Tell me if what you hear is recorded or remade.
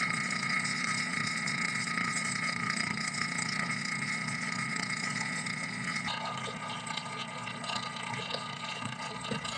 remade